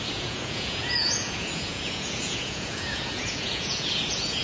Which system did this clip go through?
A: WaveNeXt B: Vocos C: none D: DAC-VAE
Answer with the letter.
B